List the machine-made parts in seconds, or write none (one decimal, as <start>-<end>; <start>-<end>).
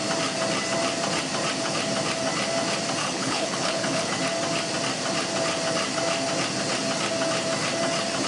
3.0-4.1